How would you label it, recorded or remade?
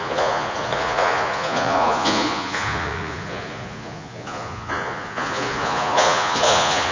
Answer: remade